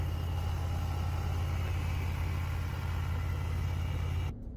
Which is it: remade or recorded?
recorded